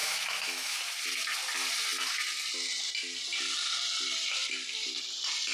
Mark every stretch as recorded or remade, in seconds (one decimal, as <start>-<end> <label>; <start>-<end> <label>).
0.0-0.8 remade; 0.8-5.5 recorded